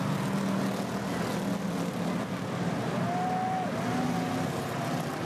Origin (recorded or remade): recorded